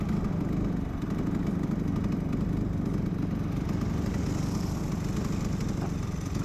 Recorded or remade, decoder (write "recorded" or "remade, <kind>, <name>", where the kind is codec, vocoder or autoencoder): recorded